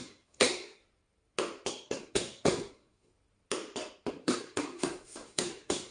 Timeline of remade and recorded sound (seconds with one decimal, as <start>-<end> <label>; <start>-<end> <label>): 0.0-0.8 remade; 0.8-1.7 recorded; 1.7-3.1 remade; 3.1-4.1 recorded; 4.1-5.9 remade